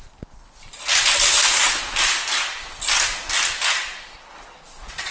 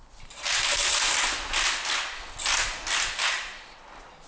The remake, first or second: first